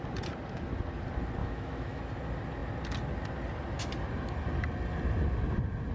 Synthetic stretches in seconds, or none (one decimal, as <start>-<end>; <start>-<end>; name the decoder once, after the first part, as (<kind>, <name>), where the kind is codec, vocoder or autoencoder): 1.4-2.0 (autoencoder, DAC-VAE)